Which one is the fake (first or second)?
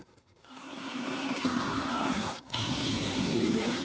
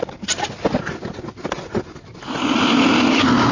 first